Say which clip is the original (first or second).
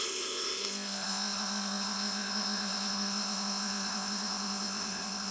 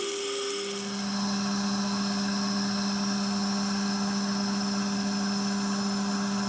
second